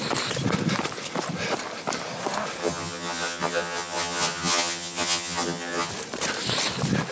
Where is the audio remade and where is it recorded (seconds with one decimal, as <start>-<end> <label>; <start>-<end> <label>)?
0.0-2.6 recorded; 2.6-5.9 remade; 5.9-7.1 recorded